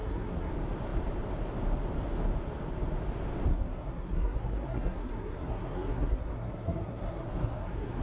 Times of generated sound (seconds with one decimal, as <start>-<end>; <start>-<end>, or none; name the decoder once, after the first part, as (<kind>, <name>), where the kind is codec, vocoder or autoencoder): 0.0-0.5 (codec, SNAC); 3.5-8.0